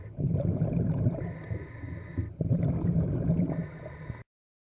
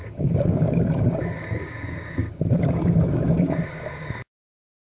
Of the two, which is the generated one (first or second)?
second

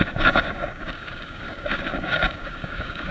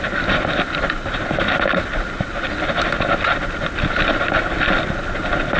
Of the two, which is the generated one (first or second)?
first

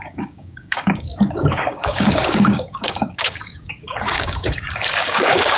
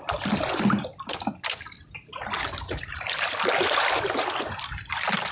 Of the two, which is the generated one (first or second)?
first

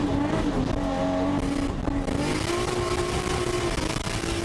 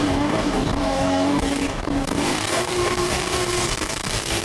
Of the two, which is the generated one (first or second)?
second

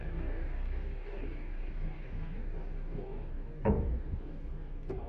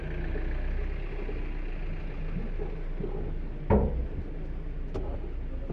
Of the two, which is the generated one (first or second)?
first